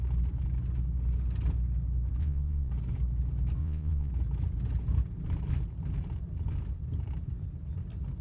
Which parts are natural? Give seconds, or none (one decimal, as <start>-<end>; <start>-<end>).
0.0-2.2; 2.7-3.6; 4.1-8.2